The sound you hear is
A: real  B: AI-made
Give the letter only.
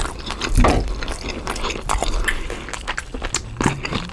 A